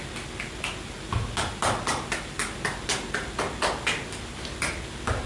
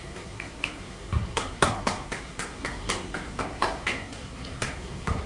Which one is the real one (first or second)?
first